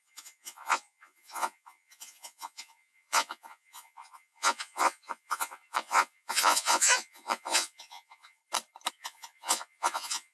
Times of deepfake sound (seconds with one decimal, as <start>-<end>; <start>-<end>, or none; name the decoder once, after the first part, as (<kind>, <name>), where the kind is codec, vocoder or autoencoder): 0.0-8.4 (vocoder, Vocos); 8.9-10.3